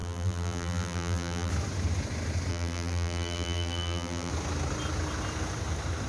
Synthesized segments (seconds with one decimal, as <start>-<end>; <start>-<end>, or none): 0.0-1.5; 2.5-4.3